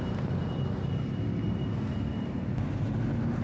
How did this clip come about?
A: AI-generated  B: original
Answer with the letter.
B